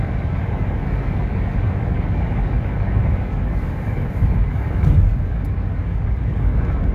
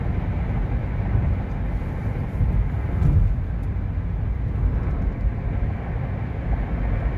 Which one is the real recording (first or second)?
second